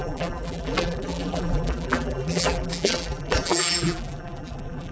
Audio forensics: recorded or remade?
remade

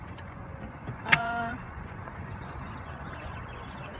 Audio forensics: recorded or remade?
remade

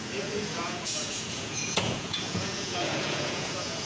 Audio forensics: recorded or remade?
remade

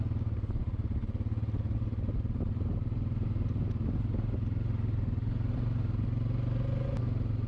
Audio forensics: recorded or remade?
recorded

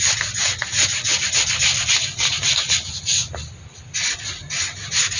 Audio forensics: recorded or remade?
recorded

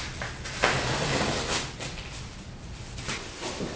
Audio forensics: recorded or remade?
recorded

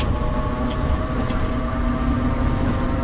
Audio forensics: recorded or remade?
recorded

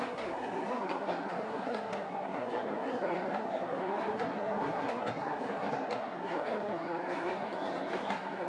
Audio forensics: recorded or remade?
remade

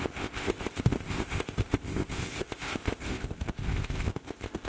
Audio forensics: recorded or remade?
remade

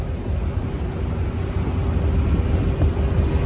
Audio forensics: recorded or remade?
recorded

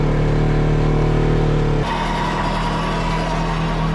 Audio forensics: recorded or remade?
recorded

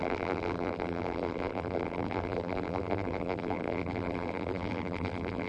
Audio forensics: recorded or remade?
remade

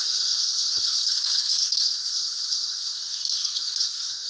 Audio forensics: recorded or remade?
remade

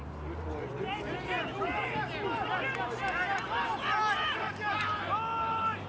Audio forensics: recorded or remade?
recorded